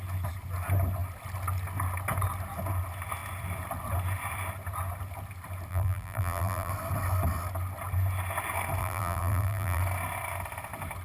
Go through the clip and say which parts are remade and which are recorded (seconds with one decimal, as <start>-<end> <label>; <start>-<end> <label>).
0.0-5.7 recorded; 5.7-6.7 remade; 6.7-8.8 recorded; 8.8-9.8 remade; 9.8-11.0 recorded